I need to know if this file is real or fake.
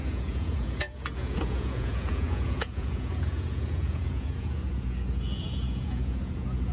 fake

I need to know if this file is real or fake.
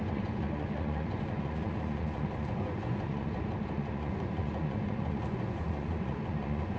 fake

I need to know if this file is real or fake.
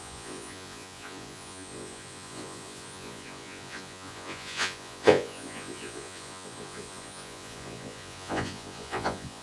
fake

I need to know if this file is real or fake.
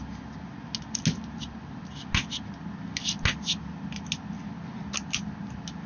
real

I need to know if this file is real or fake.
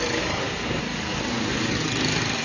real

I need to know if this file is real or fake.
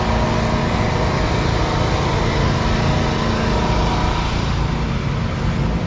real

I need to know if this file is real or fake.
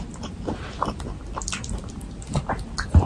real